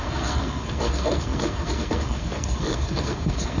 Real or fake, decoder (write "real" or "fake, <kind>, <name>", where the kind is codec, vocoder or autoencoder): fake, codec, SNAC